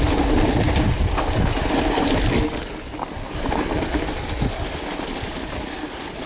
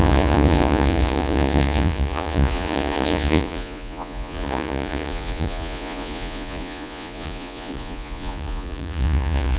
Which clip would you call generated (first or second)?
second